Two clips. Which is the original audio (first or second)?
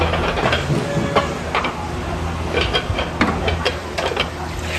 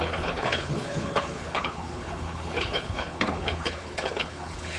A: first